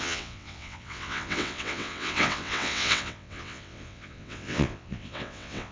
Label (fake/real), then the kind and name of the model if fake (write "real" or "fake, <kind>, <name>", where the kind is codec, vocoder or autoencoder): fake, vocoder, WaveNeXt